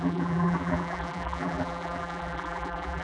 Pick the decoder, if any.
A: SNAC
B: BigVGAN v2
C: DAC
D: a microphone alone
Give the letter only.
B